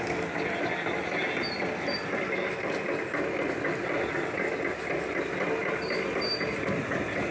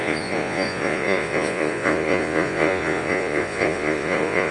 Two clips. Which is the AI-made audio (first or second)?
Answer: second